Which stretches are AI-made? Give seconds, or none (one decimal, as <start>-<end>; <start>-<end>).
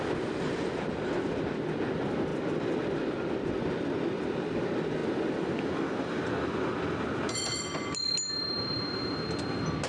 none